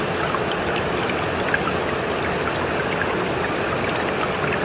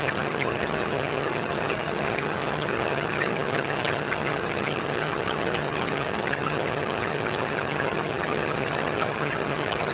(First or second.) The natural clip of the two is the first